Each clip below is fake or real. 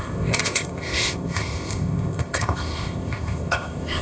fake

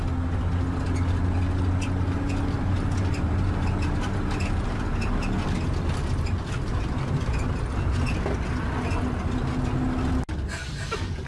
real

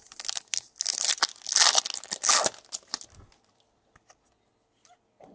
real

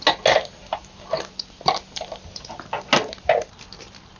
real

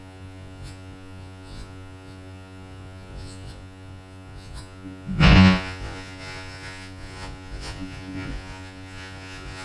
fake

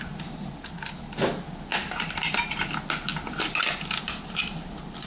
real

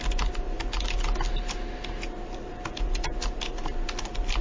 real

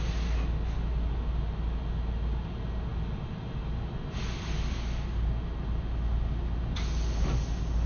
real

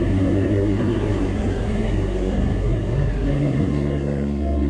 fake